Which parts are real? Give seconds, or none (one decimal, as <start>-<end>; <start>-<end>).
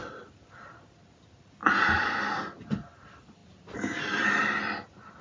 0.0-1.6; 2.2-5.2